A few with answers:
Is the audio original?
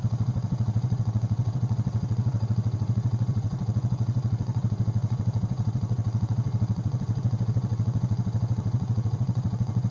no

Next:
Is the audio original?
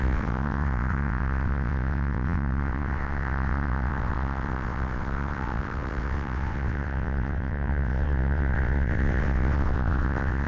no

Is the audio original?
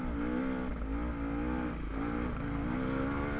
yes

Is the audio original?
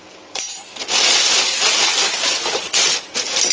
yes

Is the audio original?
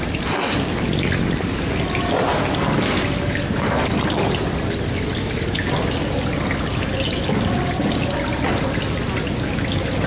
yes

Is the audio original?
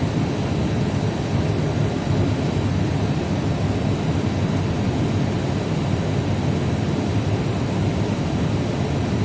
yes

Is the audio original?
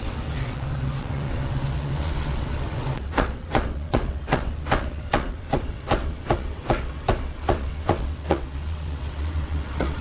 no